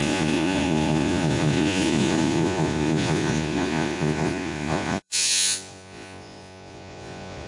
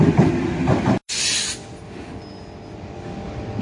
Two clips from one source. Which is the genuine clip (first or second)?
second